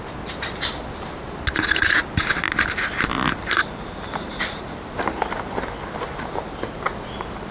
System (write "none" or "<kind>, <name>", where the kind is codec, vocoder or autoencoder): none